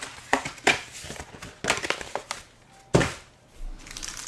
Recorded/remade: recorded